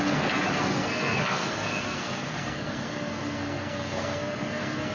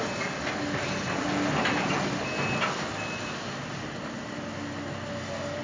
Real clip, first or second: second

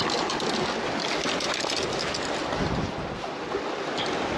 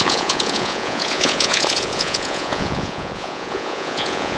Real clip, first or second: first